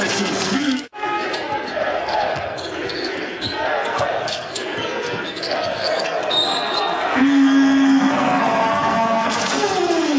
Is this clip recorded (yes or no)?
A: no